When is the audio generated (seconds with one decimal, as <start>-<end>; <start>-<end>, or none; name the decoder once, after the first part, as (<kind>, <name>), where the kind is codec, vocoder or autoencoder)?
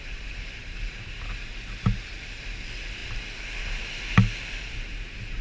0.6-1.1 (vocoder, BigVGAN v2)